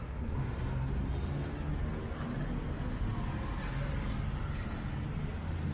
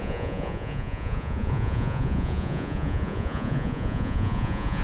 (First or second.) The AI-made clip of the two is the second